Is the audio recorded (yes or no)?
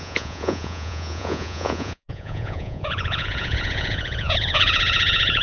no